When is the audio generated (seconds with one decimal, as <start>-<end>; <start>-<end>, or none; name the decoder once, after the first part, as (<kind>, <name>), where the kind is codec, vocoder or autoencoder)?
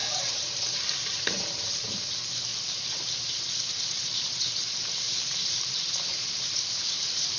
0.0-2.5 (vocoder, BigVGAN v2); 4.6-7.4